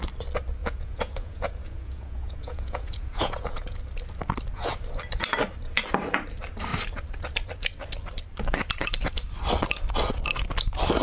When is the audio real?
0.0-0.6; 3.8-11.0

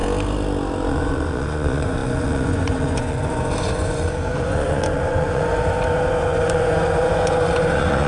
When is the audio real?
0.0-0.9

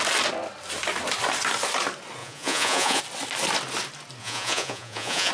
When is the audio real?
0.0-2.2; 3.0-4.2

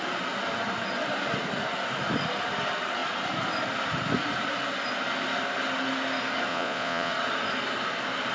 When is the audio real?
0.0-6.5; 7.1-8.3

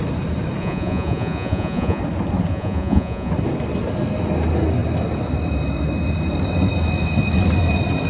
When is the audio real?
0.0-0.6; 2.0-2.5; 3.3-8.1